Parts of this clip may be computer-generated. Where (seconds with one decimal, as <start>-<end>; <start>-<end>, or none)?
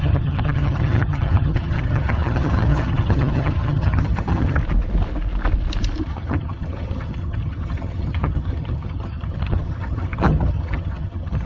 0.0-4.6; 6.0-11.5